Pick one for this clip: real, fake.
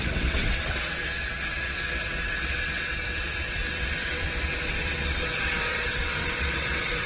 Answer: fake